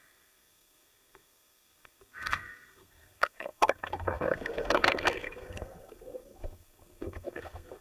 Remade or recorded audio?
remade